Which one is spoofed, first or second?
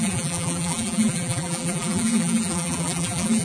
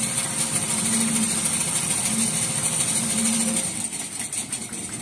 first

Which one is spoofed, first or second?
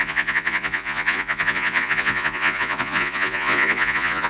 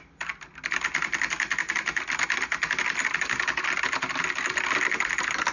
first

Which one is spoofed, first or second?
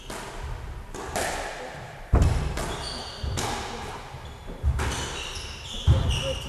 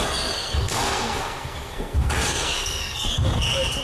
second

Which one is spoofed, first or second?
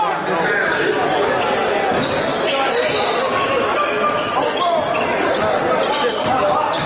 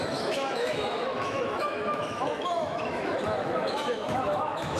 second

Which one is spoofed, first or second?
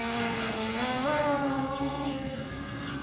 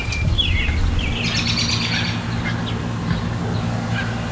first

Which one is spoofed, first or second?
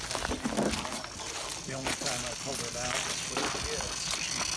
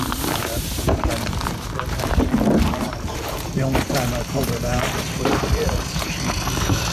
second